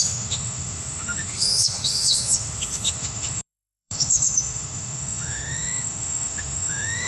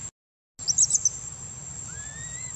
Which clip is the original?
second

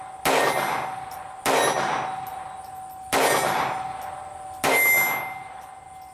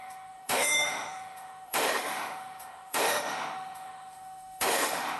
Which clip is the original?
first